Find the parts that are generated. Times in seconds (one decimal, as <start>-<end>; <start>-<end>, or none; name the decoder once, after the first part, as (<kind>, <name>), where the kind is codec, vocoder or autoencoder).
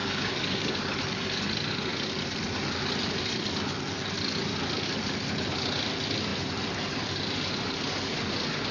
0.0-1.0 (codec, DAC)